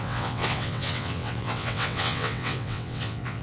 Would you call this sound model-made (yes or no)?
yes